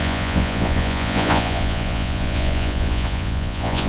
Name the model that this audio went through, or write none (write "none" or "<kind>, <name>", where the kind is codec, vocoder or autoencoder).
vocoder, Vocos